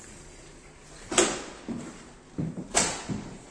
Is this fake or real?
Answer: real